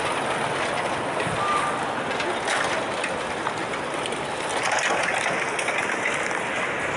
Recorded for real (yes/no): yes